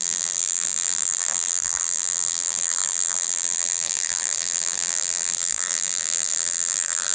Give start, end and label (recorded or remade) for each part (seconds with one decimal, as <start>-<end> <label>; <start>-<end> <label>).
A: 0.0-7.1 remade

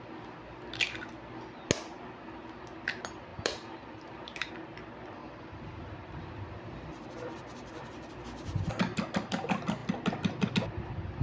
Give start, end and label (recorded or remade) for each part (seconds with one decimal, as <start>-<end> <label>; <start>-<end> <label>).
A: 0.0-3.3 recorded; 3.3-4.5 remade; 4.5-5.2 recorded; 5.2-8.1 remade; 8.1-11.2 recorded

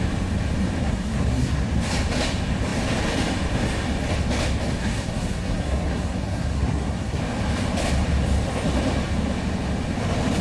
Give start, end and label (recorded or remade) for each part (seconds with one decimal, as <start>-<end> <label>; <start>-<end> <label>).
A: 0.0-0.8 recorded; 0.8-1.7 remade; 1.7-4.8 recorded; 4.8-7.2 remade; 7.2-10.4 recorded

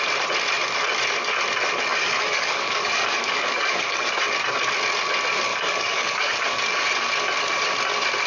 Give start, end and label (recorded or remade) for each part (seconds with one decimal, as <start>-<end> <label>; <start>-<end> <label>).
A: 0.0-1.9 recorded; 1.9-4.2 remade; 4.2-5.5 recorded; 5.5-6.8 remade; 6.8-8.3 recorded

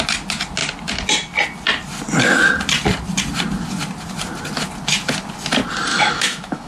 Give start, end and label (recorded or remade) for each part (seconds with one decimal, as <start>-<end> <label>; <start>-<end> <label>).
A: 0.0-5.9 recorded; 5.9-6.7 remade

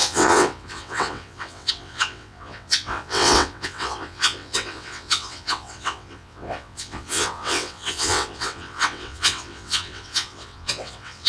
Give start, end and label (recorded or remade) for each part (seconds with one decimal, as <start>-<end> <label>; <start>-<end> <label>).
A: 0.0-11.3 remade

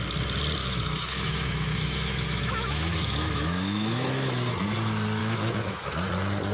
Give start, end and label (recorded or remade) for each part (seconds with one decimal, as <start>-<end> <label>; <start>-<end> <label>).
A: 0.0-0.6 recorded; 0.6-4.5 remade; 4.5-5.2 recorded; 5.2-6.1 remade; 6.1-6.5 recorded

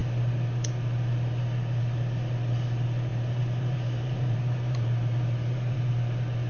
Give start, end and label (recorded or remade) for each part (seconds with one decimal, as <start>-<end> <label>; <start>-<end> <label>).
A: 0.0-3.1 recorded; 3.1-5.9 remade; 5.9-6.5 recorded